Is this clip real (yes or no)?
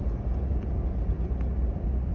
yes